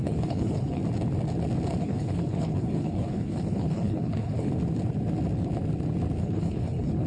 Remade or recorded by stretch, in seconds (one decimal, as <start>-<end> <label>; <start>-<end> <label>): 0.0-0.8 remade; 0.8-1.8 recorded; 1.8-4.5 remade; 4.5-6.2 recorded; 6.2-7.1 remade